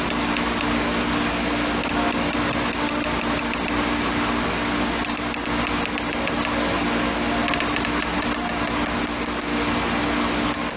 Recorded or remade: recorded